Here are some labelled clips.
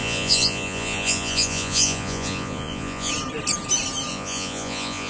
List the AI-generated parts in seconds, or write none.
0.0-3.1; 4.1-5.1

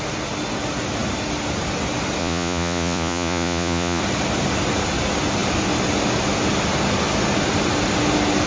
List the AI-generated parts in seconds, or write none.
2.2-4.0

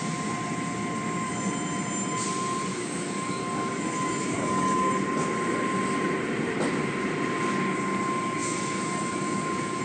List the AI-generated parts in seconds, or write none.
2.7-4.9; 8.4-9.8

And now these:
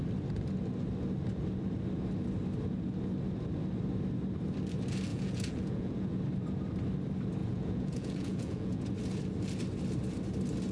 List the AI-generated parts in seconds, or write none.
5.1-6.2; 7.4-8.8

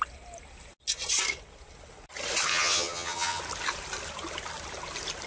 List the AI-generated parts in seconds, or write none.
2.5-3.4

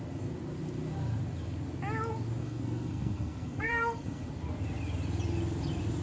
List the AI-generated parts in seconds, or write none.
2.4-4.3

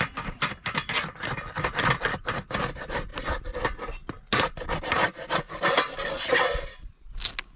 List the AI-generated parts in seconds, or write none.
none